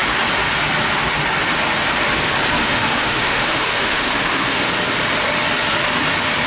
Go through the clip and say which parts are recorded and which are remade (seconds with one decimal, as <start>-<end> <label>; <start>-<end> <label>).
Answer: 0.0-2.6 recorded; 2.6-4.7 remade; 4.7-6.5 recorded